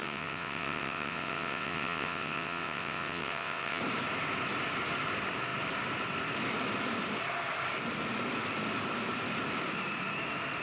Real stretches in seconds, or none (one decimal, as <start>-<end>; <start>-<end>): 3.8-10.6